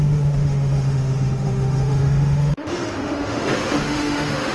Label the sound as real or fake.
fake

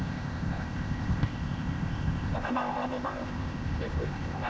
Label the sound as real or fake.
fake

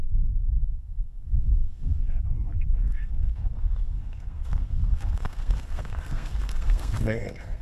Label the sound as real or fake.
fake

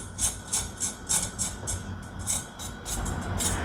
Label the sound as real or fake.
real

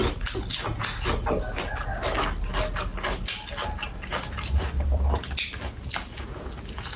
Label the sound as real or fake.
real